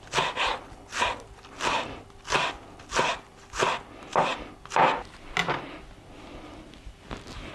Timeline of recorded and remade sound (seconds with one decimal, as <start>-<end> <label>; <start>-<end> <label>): 0.0-7.5 recorded